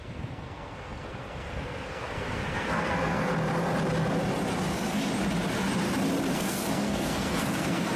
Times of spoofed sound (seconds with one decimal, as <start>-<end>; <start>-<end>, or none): 0.0-3.3; 6.3-8.0